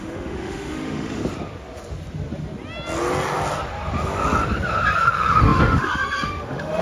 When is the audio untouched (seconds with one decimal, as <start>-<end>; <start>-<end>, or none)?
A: 1.2-5.0